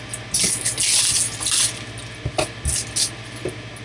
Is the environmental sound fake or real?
real